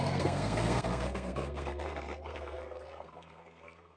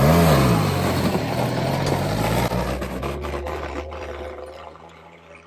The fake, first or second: first